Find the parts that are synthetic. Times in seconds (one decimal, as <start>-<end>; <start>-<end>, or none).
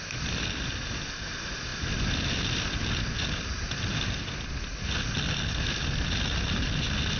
none